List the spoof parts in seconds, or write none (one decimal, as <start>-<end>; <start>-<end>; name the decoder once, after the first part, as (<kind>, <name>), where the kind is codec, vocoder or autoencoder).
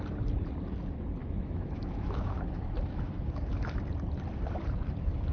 1.2-3.5 (autoencoder, DAC-VAE)